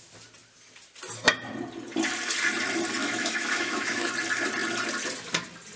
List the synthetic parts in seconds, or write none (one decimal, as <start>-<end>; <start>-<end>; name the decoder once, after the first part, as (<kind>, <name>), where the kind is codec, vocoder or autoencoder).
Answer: 3.0-4.1 (autoencoder, DAC-VAE)